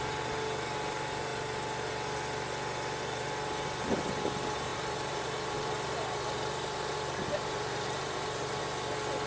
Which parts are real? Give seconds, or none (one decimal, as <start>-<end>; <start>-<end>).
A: 0.0-4.7; 8.6-9.3